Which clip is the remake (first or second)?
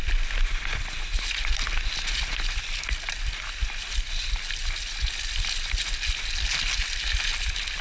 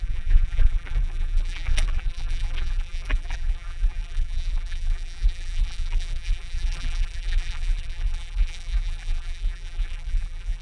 second